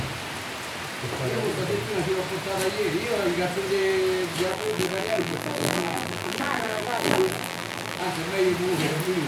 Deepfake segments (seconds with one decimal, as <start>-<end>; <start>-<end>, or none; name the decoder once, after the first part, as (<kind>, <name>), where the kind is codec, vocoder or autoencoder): 4.5-8.0 (vocoder, BigVGAN v2)